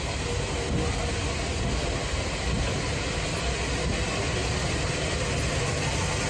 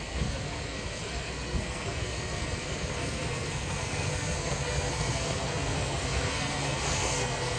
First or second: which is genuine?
first